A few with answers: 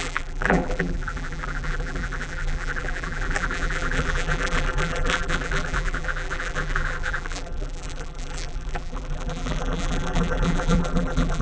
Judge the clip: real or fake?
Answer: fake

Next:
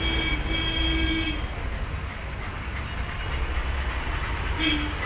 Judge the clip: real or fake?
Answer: real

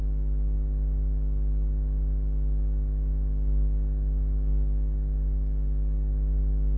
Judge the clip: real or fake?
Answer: real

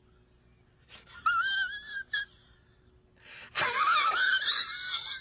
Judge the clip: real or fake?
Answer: real